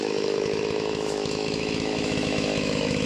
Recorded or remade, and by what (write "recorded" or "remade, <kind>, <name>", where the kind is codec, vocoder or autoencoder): remade, autoencoder, DAC-VAE